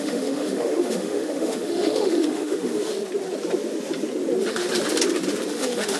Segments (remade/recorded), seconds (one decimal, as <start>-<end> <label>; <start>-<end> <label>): 0.0-2.9 remade; 2.9-5.5 recorded; 5.5-6.0 remade